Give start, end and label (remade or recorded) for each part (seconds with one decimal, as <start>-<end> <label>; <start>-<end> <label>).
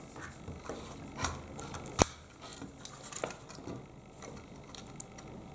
0.0-5.5 recorded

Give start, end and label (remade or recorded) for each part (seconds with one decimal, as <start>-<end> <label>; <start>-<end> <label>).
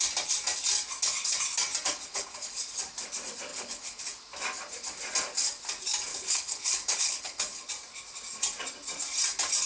0.0-1.9 recorded; 1.9-2.6 remade; 2.6-3.5 recorded; 3.5-4.0 remade; 4.0-6.1 recorded; 6.1-7.7 remade; 7.7-9.7 recorded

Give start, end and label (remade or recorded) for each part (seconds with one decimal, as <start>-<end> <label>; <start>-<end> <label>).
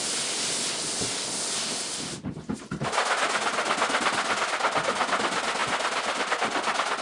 0.0-7.0 recorded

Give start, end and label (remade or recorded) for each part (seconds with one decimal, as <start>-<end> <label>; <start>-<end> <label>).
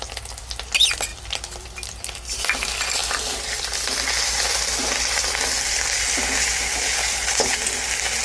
0.0-6.7 recorded; 6.7-7.6 remade; 7.6-8.2 recorded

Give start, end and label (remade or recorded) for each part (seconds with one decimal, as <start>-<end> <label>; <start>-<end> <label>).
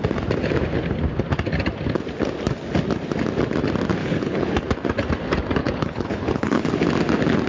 0.0-4.0 recorded; 4.0-4.6 remade; 4.6-5.6 recorded; 5.6-6.7 remade; 6.7-7.5 recorded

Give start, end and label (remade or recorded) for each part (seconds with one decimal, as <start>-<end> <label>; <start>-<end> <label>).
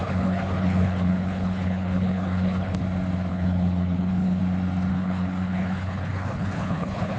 0.0-2.8 remade; 2.8-3.3 recorded; 3.3-4.4 remade; 4.4-4.9 recorded; 4.9-7.2 remade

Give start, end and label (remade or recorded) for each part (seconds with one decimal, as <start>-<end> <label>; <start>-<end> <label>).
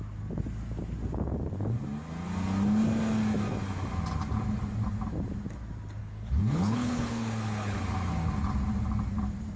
0.0-6.0 recorded; 6.0-7.8 remade; 7.8-9.6 recorded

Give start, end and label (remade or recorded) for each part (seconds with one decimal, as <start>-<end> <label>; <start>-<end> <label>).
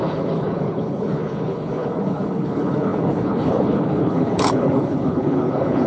0.0-5.9 remade